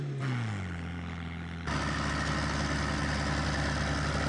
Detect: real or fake real